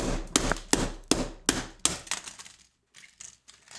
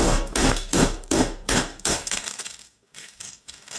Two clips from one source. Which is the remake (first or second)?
second